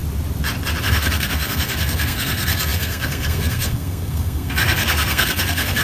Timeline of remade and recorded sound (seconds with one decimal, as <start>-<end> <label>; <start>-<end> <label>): 0.0-0.8 recorded; 0.8-5.8 remade